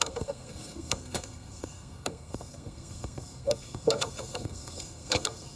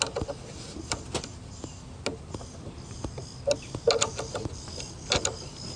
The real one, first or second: second